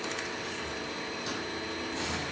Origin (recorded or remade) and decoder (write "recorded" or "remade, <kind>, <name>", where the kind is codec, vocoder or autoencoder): recorded